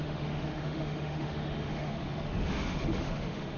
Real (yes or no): no